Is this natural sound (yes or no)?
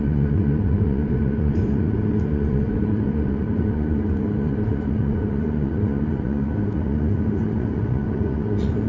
no